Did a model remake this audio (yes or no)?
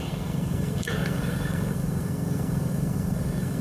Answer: yes